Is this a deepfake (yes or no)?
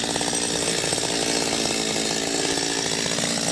no